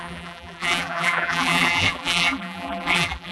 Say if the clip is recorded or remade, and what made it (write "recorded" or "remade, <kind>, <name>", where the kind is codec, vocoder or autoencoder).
remade, vocoder, BigVGAN v2